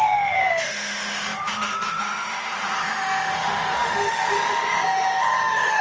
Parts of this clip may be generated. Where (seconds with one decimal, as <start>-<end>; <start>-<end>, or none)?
0.0-5.8